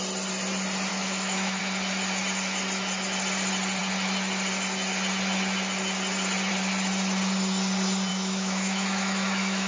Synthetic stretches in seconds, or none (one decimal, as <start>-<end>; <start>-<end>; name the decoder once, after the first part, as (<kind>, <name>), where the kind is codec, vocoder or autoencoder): 0.9-1.6 (autoencoder, DAC-VAE); 8.1-9.7